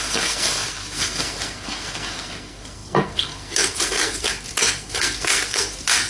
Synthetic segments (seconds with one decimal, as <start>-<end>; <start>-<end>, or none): 0.0-6.1